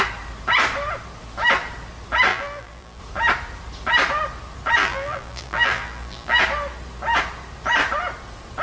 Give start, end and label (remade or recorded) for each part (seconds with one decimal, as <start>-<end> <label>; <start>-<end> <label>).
0.0-2.3 recorded; 2.3-3.0 remade; 3.0-4.8 recorded; 4.8-6.4 remade; 6.4-8.6 recorded